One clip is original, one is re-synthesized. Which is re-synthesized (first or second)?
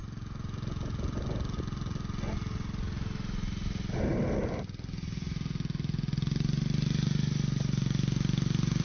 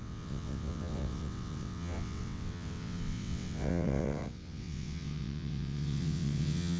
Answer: second